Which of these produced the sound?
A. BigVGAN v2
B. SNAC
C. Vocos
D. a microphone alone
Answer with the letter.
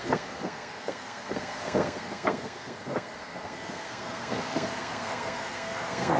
B